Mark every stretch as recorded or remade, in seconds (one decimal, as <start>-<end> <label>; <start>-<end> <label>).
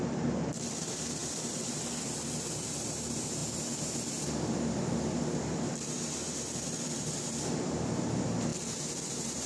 0.0-3.4 remade; 3.4-4.5 recorded; 4.5-8.5 remade; 8.5-9.1 recorded; 9.1-9.5 remade